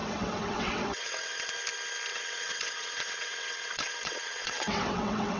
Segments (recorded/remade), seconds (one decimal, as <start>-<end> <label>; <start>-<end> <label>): 0.0-1.5 remade; 1.5-2.1 recorded; 2.1-5.4 remade